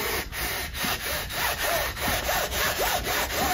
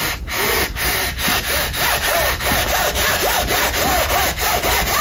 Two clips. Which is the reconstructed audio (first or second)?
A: first